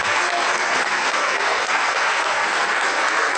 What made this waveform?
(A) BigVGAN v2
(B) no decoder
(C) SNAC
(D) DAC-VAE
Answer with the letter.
C